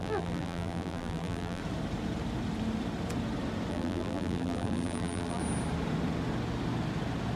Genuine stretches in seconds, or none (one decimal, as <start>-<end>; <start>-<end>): 1.6-3.7; 5.4-7.4

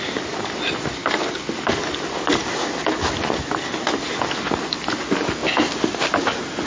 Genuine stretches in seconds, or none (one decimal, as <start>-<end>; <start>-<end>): 0.0-6.7

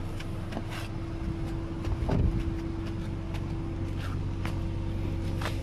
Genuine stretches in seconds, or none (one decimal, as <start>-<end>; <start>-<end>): 0.0-5.6

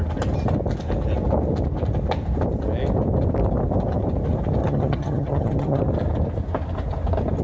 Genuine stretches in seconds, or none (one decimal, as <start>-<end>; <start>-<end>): 0.0-4.6; 5.8-7.4

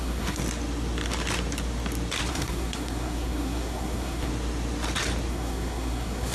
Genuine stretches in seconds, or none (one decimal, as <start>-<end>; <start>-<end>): 0.4-2.3; 4.3-5.3

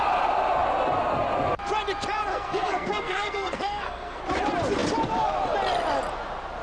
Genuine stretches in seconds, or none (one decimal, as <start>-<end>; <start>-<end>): 0.0-2.3; 4.2-6.6

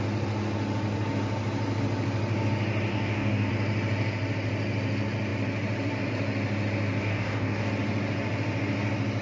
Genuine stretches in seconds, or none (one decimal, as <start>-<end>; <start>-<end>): 0.0-2.9; 3.5-7.0; 7.7-9.2